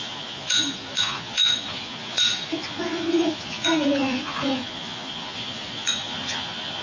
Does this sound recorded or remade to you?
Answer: remade